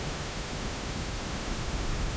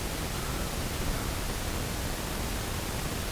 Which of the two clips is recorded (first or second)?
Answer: second